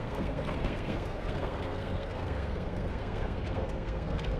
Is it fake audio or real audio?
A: fake